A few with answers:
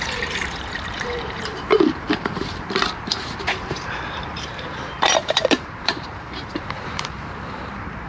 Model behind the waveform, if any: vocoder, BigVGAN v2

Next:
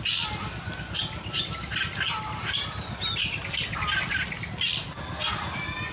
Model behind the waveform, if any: none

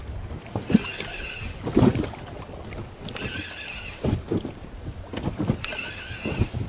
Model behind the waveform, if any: none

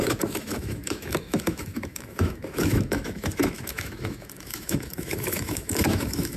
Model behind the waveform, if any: autoencoder, DAC-VAE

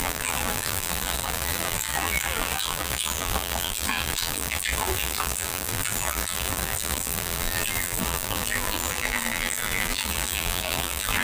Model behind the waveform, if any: vocoder, BigVGAN v2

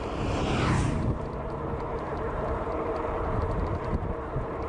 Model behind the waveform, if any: vocoder, BigVGAN v2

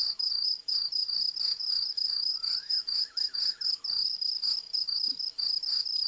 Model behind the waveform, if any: autoencoder, DAC-VAE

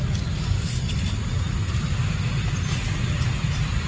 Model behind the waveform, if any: none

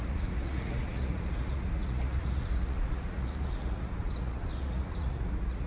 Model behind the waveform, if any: vocoder, Vocos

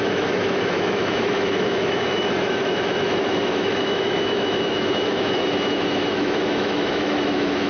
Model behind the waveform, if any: autoencoder, DAC-VAE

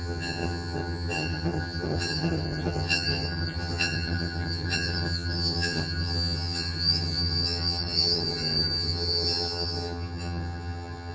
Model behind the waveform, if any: vocoder, HiFi-GAN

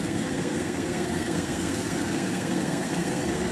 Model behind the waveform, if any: codec, SNAC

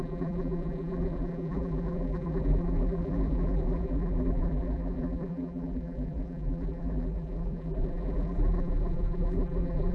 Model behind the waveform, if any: vocoder, BigVGAN v2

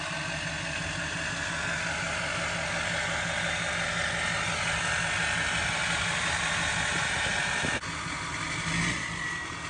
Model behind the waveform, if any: none